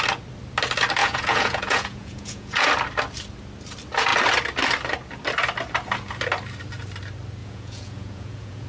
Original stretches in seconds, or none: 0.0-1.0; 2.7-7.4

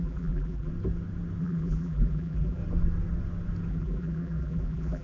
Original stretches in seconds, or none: 0.7-1.4; 2.6-3.7

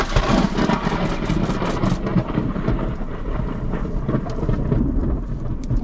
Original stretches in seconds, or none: 0.5-2.1; 3.2-5.8

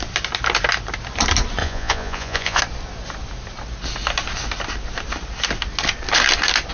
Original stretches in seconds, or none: 0.0-1.6; 2.6-6.7

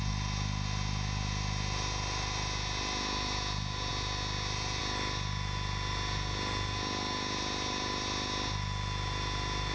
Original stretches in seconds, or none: 0.0-9.7